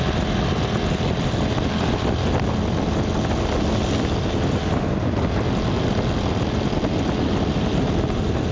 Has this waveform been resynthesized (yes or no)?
no